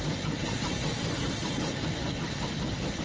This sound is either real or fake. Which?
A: real